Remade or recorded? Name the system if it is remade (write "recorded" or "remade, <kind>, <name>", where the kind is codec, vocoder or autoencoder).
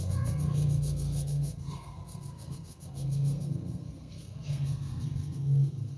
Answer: remade, codec, SNAC